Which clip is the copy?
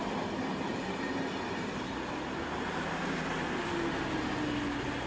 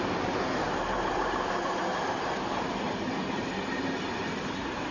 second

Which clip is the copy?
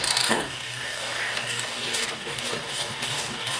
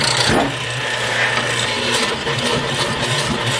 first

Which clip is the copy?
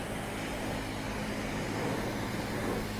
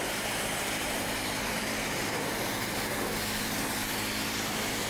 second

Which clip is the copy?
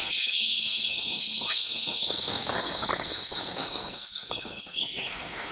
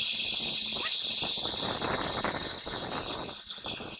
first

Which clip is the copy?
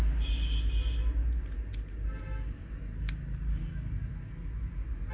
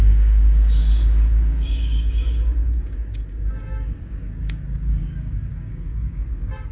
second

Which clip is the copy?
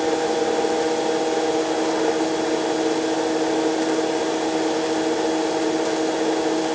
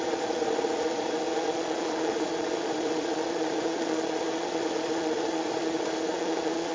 second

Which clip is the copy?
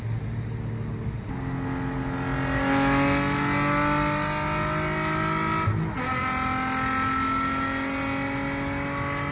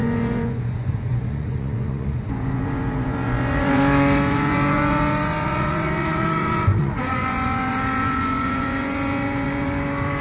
second